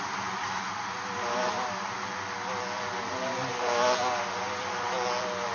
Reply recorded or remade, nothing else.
recorded